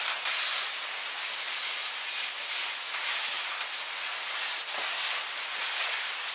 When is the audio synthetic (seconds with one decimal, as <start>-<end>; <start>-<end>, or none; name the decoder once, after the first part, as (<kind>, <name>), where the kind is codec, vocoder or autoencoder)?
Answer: none